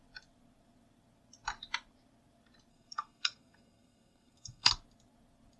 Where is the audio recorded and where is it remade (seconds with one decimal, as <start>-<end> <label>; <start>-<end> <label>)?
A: 0.0-2.7 recorded; 2.7-4.7 remade; 4.7-5.6 recorded